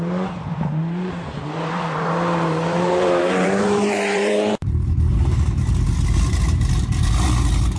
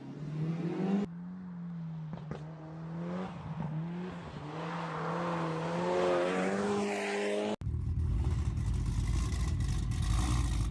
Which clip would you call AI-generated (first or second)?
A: first